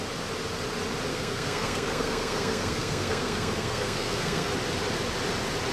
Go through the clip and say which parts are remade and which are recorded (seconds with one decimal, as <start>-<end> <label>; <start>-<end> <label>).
0.0-1.1 recorded; 1.1-4.5 remade; 4.5-5.7 recorded